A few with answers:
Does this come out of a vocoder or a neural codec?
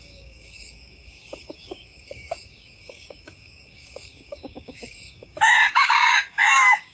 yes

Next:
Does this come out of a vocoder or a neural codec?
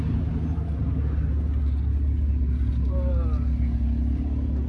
no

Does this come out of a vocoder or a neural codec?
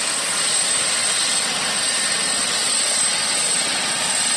no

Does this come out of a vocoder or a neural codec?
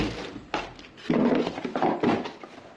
no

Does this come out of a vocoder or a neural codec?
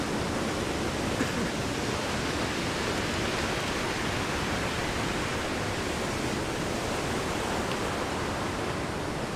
yes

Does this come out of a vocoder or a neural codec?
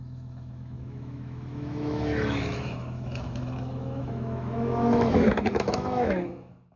yes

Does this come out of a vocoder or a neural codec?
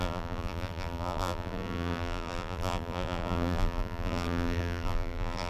yes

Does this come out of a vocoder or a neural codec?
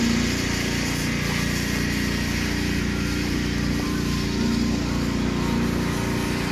no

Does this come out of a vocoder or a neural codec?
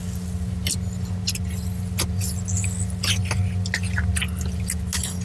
no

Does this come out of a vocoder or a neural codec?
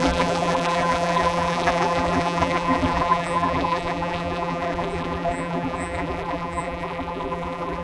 yes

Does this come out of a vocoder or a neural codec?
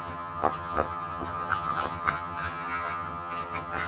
yes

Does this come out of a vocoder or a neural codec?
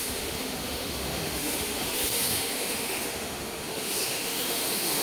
yes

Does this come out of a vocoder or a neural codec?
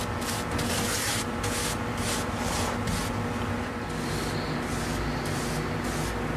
no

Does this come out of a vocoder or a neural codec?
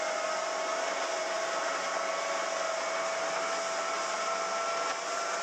no